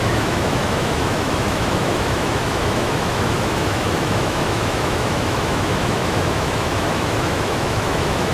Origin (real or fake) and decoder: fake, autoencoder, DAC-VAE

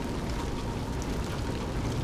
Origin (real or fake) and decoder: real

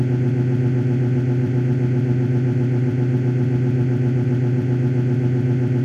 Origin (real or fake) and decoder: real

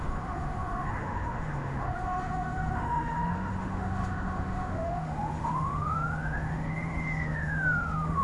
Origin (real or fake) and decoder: fake, autoencoder, DAC-VAE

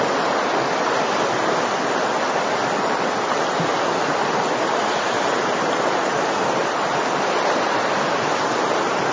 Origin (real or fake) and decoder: real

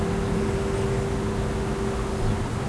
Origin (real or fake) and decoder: real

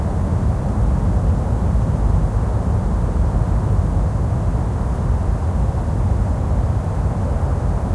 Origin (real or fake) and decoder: real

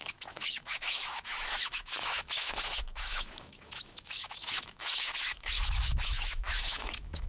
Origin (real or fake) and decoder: fake, autoencoder, DAC-VAE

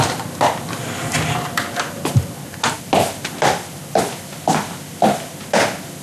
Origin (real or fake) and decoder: real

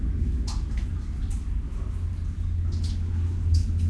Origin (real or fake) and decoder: real